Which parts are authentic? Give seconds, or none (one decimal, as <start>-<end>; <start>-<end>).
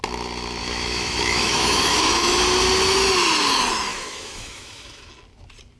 0.0-0.6; 2.4-3.9; 5.1-5.8